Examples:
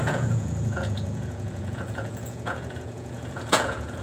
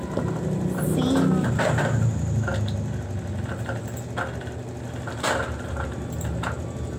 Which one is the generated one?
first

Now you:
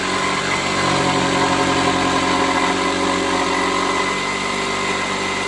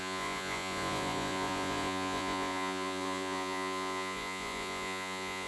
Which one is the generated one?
second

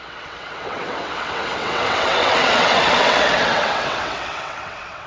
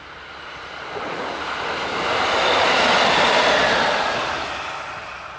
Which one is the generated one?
first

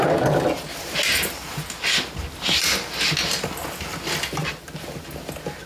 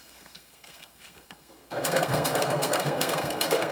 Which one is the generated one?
second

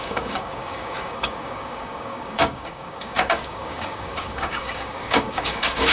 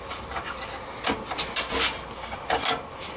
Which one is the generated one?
first